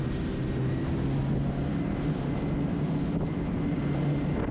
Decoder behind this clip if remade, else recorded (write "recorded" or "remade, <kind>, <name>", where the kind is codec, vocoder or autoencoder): recorded